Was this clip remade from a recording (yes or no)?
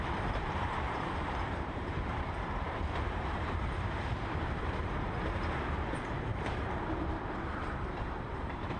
yes